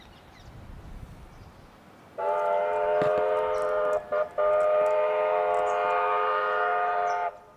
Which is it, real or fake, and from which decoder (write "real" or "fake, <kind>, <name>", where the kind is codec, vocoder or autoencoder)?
real